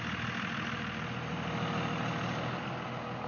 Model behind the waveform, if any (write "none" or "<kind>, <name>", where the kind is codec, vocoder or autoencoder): none